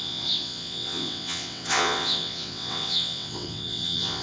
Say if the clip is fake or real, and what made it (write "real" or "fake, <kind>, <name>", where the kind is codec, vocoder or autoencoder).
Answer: fake, vocoder, WaveNeXt